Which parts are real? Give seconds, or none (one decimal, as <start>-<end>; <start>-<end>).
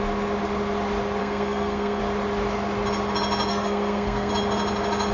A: 0.0-1.2; 2.0-3.5; 4.3-5.1